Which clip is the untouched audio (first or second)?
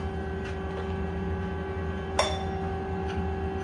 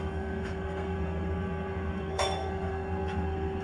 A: first